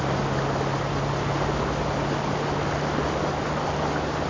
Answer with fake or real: real